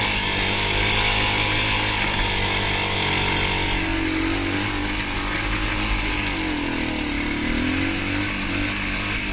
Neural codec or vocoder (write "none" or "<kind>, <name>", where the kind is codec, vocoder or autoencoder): none